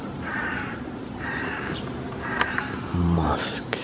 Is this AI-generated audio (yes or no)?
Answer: yes